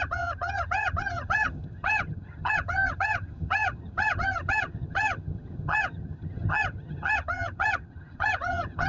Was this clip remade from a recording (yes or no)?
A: yes